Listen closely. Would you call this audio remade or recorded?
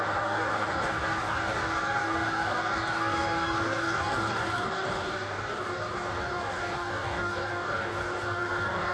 remade